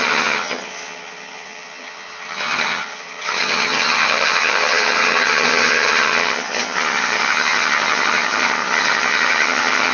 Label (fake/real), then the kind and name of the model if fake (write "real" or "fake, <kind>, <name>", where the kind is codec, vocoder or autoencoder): fake, vocoder, HiFi-GAN